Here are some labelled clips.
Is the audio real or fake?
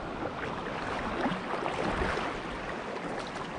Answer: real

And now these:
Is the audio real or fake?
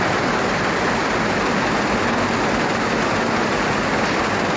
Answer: real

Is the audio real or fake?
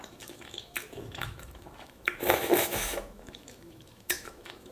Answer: fake